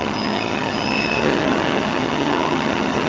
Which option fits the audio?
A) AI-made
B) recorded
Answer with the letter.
A